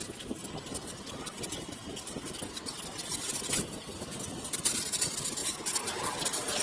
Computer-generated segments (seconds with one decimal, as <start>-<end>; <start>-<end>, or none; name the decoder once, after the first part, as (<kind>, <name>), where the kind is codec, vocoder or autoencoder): none